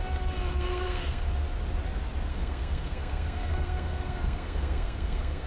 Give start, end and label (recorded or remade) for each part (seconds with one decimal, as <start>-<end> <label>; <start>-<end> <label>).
0.0-0.5 recorded; 0.5-1.2 remade; 1.2-2.3 recorded; 2.3-5.5 remade